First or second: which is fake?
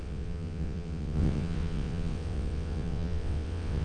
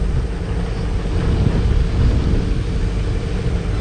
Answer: first